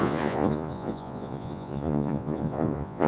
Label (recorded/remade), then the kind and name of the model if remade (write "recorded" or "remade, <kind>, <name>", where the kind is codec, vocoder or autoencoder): remade, vocoder, Vocos